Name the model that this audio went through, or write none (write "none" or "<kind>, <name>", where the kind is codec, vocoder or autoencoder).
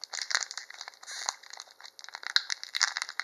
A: none